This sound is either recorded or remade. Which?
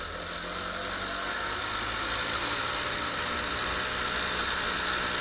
recorded